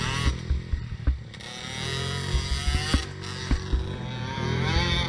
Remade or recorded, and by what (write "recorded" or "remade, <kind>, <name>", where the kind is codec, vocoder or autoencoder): recorded